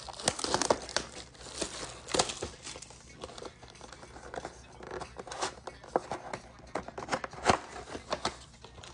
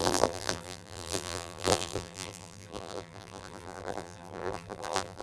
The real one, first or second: first